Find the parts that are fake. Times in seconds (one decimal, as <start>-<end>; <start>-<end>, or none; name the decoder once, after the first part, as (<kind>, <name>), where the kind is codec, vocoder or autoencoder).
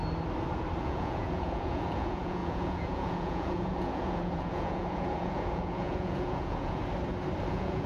0.8-6.8 (vocoder, Vocos); 7.5-7.9